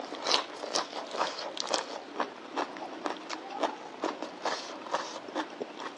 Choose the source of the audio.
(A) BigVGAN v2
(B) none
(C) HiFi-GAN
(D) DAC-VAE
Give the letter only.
B